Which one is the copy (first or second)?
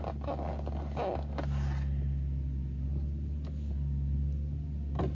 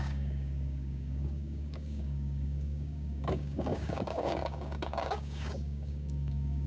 second